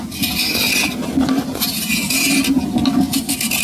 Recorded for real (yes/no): yes